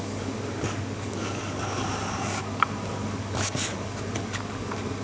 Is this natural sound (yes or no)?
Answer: no